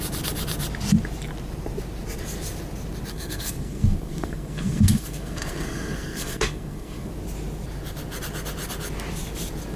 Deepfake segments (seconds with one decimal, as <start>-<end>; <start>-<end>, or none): 3.1-7.1